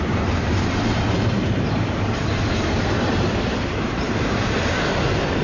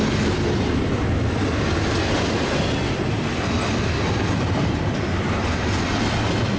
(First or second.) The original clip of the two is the second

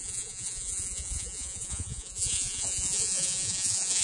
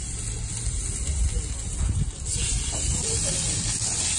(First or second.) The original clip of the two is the second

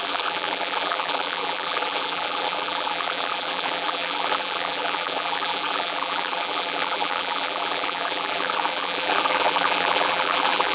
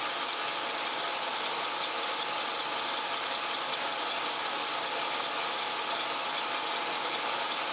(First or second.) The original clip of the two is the second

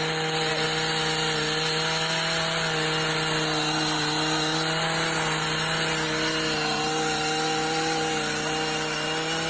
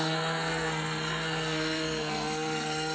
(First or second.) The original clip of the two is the first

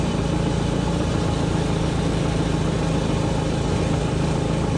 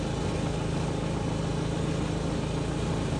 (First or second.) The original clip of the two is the second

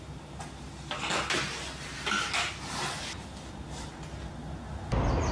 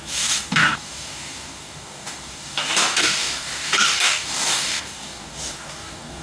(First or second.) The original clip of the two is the first